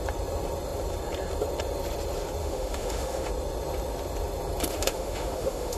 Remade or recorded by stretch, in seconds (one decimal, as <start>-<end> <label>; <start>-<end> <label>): 0.0-2.4 recorded; 2.4-3.3 remade; 3.3-4.7 recorded; 4.7-5.8 remade